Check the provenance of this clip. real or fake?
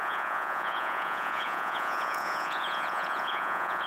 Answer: fake